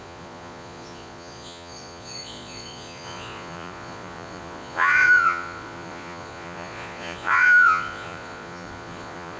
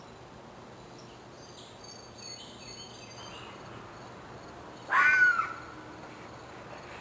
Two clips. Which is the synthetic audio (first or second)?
first